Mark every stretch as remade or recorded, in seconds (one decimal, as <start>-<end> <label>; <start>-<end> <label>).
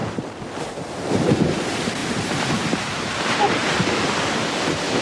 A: 0.0-5.0 recorded